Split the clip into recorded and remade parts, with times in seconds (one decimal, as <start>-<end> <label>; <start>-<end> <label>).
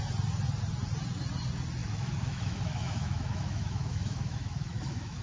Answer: 0.0-1.8 recorded; 1.8-5.2 remade